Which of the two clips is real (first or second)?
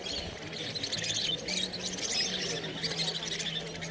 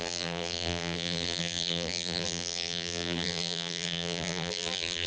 first